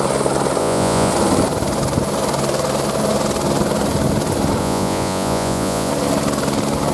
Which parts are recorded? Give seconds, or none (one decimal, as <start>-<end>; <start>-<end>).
0.0-0.6; 1.1-4.6; 5.9-6.9